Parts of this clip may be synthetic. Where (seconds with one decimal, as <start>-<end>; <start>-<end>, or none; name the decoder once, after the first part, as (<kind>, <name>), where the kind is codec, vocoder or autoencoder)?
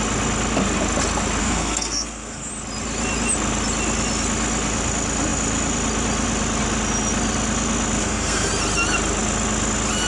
1.4-2.5 (codec, SNAC); 8.0-8.5